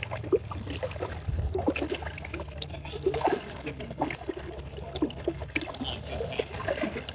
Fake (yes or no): no